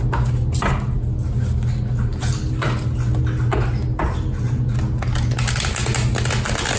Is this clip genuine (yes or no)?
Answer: yes